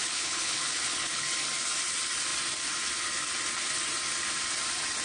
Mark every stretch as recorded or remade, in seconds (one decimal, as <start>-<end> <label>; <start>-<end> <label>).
0.0-1.2 remade; 1.2-5.0 recorded